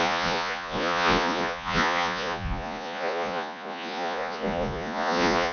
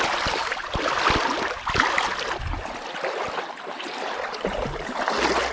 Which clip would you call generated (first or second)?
first